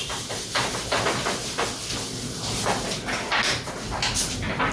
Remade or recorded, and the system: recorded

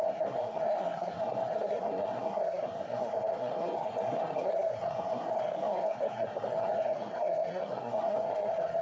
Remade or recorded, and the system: remade, codec, SNAC